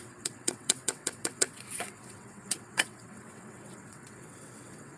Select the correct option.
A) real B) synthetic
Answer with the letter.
B